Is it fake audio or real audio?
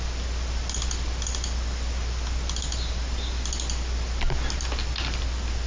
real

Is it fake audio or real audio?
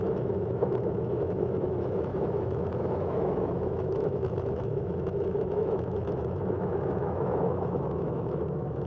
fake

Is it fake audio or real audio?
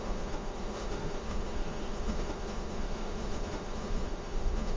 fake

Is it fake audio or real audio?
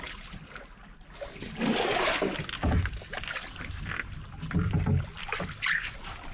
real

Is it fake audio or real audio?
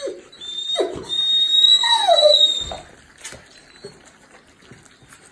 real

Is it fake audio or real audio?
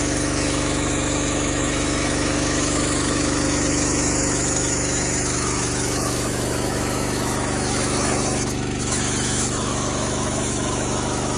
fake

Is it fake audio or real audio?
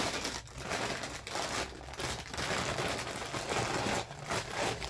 real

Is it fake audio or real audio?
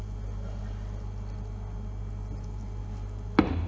real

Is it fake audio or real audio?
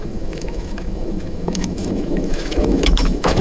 fake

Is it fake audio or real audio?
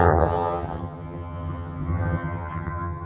fake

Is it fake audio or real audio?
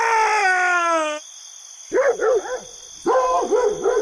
real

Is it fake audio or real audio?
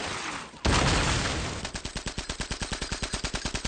real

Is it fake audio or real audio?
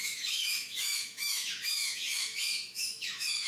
fake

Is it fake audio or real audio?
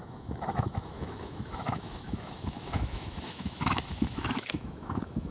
fake